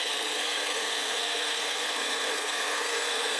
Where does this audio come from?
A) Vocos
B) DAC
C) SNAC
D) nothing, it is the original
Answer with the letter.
C